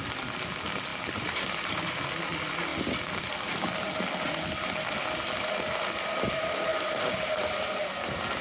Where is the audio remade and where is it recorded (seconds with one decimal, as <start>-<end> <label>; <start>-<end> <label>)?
0.0-0.9 recorded; 0.9-2.2 remade; 2.2-8.4 recorded